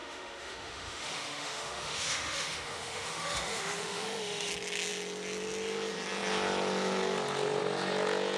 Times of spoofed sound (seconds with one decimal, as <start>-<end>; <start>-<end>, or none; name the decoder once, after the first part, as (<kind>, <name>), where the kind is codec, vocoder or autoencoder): 0.0-4.5 (autoencoder, DAC-VAE)